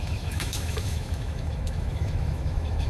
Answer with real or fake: fake